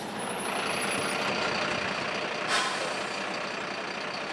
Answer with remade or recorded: recorded